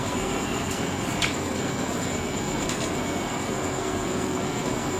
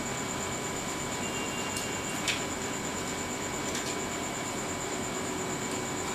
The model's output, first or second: first